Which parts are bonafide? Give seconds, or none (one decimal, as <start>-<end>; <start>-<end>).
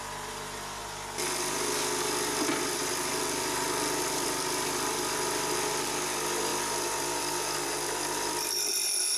0.0-0.8; 5.9-6.5; 8.7-9.2